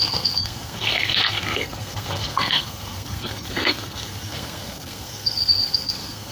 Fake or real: fake